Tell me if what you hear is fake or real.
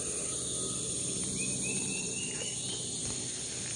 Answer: real